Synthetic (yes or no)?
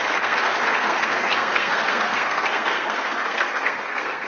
yes